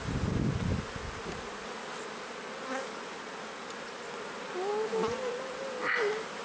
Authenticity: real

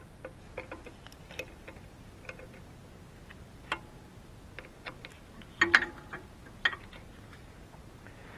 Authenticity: real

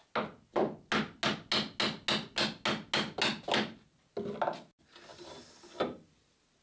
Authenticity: real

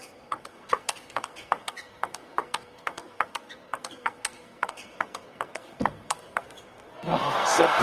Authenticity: fake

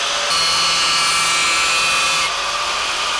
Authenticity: real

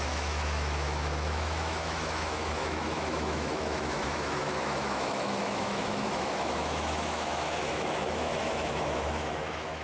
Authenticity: fake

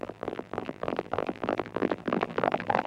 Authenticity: fake